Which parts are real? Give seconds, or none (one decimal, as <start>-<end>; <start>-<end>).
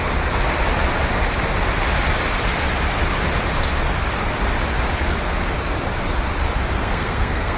0.0-6.8